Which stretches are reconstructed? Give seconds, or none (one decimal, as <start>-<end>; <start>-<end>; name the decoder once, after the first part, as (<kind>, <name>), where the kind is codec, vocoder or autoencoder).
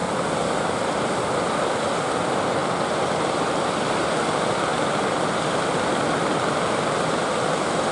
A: none